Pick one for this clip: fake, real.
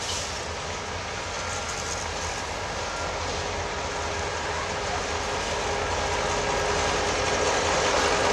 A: real